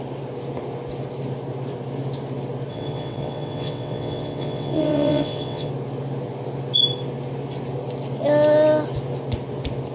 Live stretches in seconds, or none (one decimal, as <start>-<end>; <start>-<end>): 0.0-2.7; 5.7-9.9